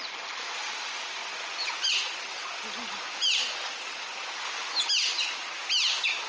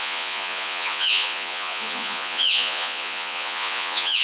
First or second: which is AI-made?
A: second